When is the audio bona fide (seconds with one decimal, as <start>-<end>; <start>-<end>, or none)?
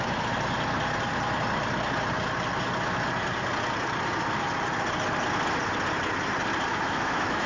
0.0-6.7